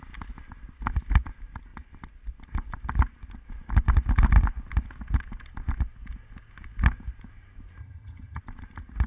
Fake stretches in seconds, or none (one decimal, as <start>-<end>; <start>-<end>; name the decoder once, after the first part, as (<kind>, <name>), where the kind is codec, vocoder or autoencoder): 7.8-8.4 (vocoder, HiFi-GAN)